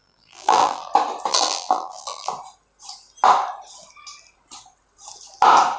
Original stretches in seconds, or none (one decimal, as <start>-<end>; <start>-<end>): 0.9-1.3; 2.3-5.8